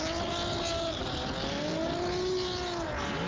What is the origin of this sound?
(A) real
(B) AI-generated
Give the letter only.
A